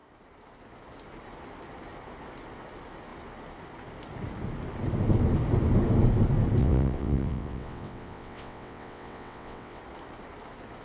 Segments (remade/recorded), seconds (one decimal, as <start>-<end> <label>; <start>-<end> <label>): 0.0-6.6 recorded; 6.6-9.8 remade; 9.8-10.8 recorded